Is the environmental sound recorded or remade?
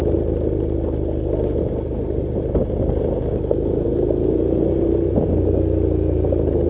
recorded